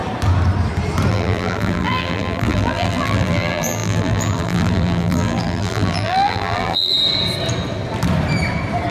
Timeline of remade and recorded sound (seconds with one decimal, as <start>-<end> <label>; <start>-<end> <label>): 0.0-1.1 recorded; 1.1-6.9 remade; 6.9-8.9 recorded